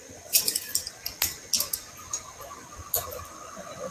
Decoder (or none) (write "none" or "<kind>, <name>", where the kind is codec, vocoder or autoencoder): none